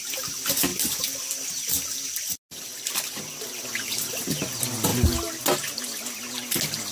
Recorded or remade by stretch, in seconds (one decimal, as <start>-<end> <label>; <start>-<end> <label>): 0.0-6.9 recorded